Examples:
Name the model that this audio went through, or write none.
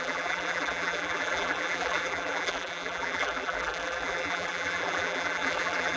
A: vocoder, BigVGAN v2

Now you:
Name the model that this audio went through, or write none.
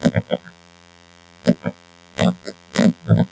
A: vocoder, BigVGAN v2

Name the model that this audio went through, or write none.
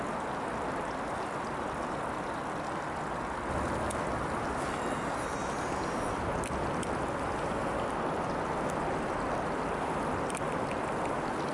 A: none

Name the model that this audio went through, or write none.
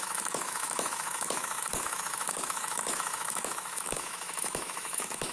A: autoencoder, DAC-VAE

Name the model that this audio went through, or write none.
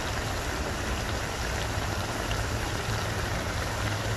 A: none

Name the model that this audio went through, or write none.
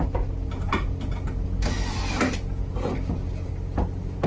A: none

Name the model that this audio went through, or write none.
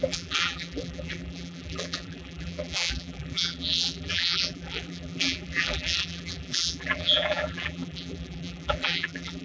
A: vocoder, BigVGAN v2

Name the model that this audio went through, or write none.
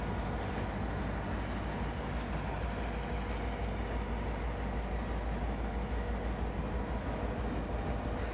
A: none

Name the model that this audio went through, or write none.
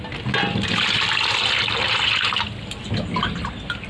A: none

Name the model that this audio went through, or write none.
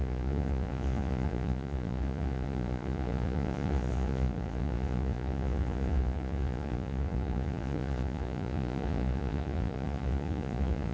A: vocoder, Vocos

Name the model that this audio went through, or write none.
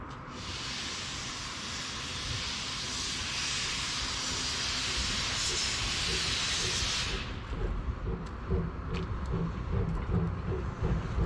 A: none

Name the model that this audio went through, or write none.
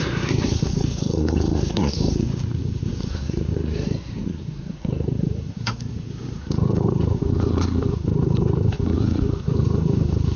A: codec, SNAC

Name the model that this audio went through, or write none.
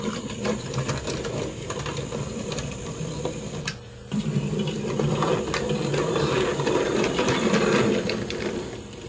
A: vocoder, BigVGAN v2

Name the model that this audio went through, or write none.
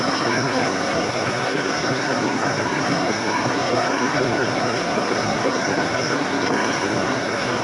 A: codec, SNAC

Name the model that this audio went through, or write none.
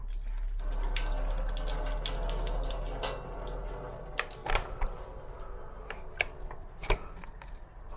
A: none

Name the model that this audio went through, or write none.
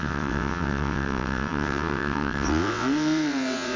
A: vocoder, WaveNeXt